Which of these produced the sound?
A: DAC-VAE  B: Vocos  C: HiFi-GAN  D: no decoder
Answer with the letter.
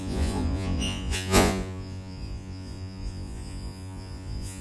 B